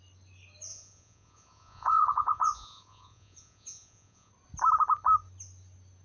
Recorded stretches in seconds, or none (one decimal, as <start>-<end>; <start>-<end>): 0.0-0.7; 4.3-6.0